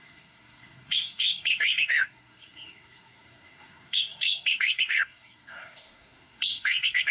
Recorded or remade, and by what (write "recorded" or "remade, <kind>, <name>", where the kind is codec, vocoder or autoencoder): remade, codec, SNAC